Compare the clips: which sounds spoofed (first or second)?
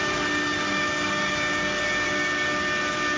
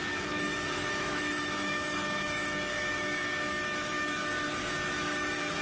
second